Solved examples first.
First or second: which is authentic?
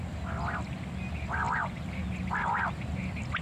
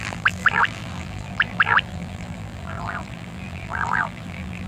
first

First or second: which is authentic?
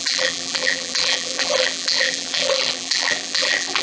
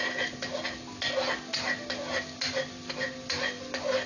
second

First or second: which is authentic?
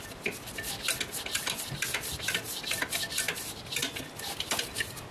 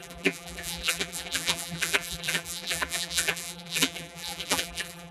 first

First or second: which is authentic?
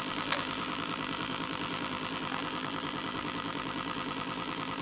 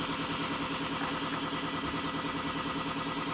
second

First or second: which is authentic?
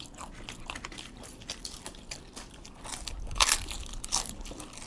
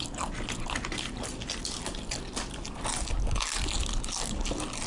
second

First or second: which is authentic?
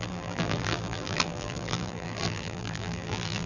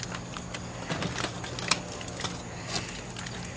second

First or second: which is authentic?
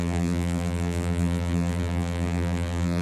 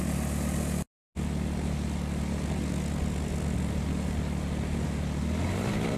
second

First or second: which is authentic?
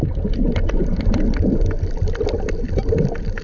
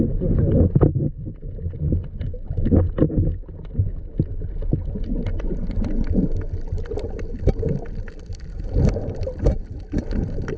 second